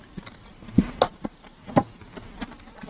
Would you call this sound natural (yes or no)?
yes